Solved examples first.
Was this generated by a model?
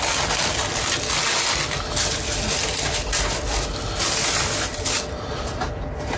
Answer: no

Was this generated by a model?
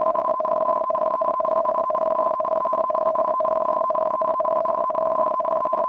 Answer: yes